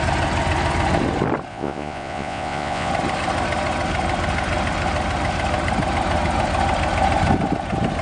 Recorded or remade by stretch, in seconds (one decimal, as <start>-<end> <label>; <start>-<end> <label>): 0.0-1.5 recorded; 1.5-2.9 remade; 2.9-8.0 recorded